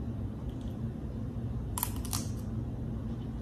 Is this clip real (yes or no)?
yes